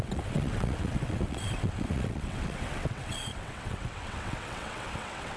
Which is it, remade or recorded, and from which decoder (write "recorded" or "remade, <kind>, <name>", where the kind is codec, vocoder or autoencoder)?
remade, vocoder, WaveNeXt